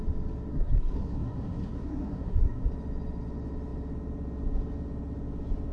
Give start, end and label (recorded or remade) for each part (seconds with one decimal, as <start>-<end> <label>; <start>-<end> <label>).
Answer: 0.0-0.5 recorded; 0.5-2.7 remade; 2.7-5.7 recorded